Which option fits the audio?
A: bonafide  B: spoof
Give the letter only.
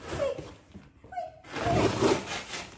A